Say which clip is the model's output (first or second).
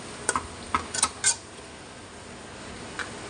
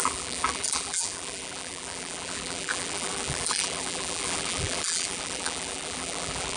second